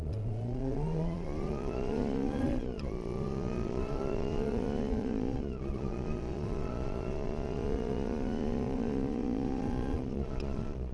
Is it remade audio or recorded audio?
remade